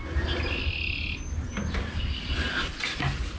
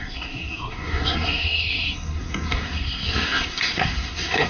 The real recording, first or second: first